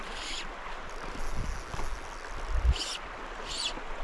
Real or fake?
real